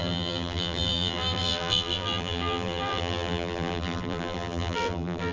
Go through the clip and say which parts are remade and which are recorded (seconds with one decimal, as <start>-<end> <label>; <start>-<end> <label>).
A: 0.0-5.3 remade